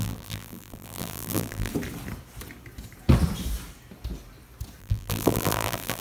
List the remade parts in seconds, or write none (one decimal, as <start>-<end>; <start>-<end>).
0.0-1.7; 4.8-6.0